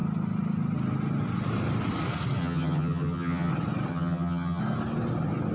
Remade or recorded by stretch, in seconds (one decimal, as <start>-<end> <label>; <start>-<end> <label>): 0.0-2.4 recorded; 2.4-3.5 remade; 3.5-3.9 recorded; 3.9-4.6 remade; 4.6-5.5 recorded